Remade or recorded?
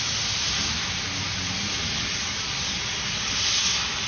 recorded